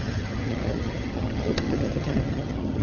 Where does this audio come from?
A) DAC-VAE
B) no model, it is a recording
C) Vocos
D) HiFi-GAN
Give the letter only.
D